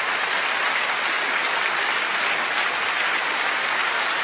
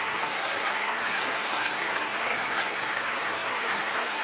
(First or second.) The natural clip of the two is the first